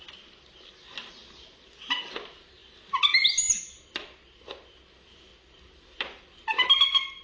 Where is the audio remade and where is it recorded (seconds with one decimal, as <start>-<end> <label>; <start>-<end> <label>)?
0.0-7.2 recorded